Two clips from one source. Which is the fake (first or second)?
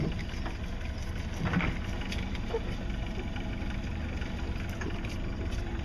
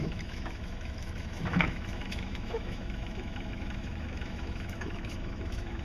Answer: second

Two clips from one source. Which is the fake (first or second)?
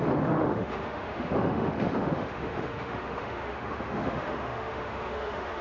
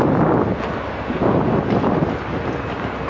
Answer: first